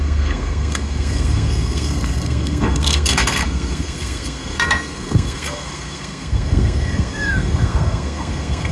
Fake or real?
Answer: fake